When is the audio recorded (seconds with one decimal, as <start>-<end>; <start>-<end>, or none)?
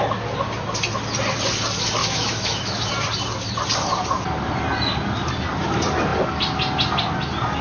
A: 0.0-2.0; 2.9-7.6